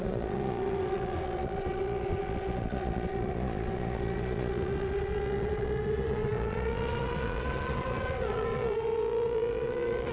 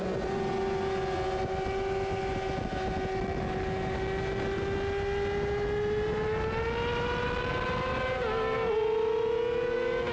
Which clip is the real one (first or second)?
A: second